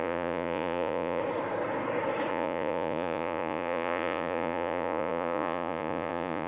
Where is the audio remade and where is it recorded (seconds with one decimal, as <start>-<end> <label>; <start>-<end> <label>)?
0.0-1.2 remade; 1.2-2.3 recorded; 2.3-6.5 remade